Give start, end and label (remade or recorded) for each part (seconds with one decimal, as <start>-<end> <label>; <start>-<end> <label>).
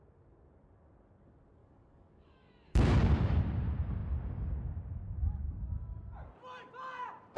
0.0-1.6 recorded; 1.6-3.4 remade; 3.4-7.4 recorded